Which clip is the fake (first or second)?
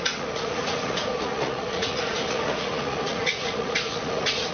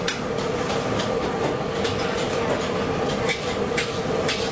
first